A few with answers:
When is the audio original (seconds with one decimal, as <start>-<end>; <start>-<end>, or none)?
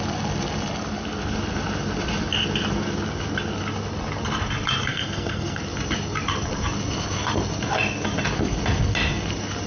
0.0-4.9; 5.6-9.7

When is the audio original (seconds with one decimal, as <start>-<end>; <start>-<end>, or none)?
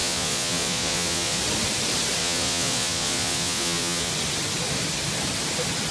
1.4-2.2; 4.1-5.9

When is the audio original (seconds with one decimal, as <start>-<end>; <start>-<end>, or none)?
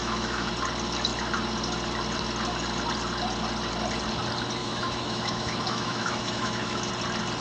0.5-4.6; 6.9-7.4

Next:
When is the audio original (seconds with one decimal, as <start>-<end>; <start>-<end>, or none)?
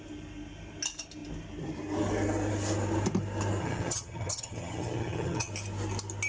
0.0-3.6; 5.5-6.3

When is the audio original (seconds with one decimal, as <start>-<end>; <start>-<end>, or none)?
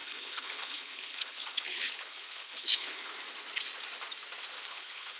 3.1-4.6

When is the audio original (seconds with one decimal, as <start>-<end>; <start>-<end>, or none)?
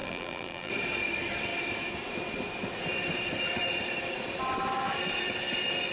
0.7-5.9